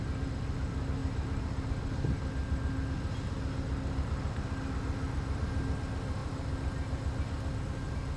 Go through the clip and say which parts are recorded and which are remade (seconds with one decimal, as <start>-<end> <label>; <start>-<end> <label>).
0.0-8.2 recorded

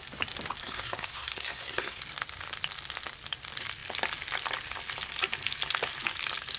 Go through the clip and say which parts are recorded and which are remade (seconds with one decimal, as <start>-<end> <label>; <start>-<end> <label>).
0.0-0.6 recorded; 0.6-2.0 remade; 2.0-6.6 recorded

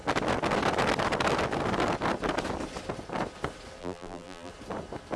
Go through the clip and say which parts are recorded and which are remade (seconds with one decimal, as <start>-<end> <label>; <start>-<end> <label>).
0.0-3.8 recorded; 3.8-4.5 remade; 4.5-5.2 recorded

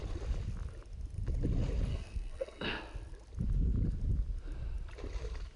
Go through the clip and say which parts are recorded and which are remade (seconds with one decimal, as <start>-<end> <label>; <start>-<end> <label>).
0.0-1.9 recorded; 1.9-2.8 remade; 2.8-5.6 recorded

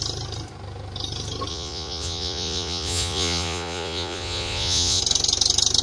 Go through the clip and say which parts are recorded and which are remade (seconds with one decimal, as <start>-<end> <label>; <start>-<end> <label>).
0.0-1.5 recorded; 1.5-5.0 remade; 5.0-5.8 recorded

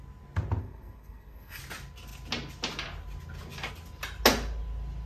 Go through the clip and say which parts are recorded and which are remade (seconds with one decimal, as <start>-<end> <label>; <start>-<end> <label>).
0.0-0.6 recorded; 0.6-1.6 remade; 1.6-5.1 recorded